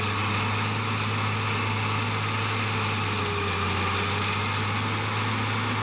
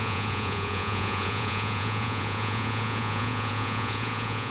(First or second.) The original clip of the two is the first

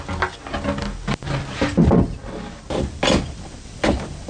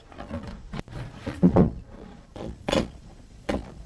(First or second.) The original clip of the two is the first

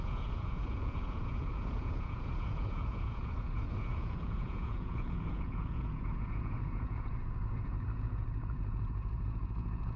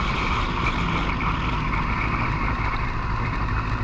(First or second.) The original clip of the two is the second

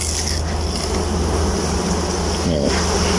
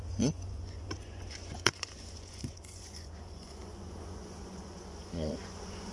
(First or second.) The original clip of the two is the first